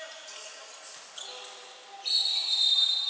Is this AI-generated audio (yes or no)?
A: no